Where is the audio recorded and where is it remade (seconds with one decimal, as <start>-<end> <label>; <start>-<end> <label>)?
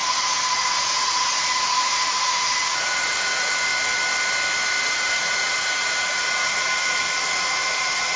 0.0-3.7 remade; 3.7-4.8 recorded; 4.8-8.2 remade